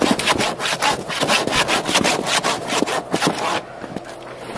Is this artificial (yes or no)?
no